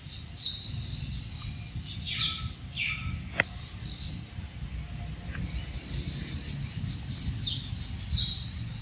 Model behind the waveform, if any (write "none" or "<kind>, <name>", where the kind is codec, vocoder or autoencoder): none